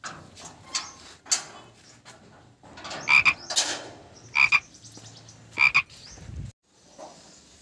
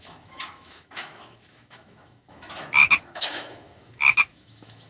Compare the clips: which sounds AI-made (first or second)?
second